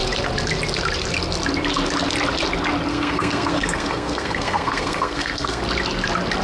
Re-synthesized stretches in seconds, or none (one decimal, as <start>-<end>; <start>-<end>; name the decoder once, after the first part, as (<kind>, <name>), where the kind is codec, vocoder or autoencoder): 2.9-5.6 (codec, SNAC)